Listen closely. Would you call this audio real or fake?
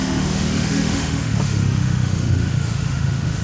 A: fake